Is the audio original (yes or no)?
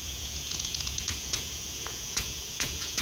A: no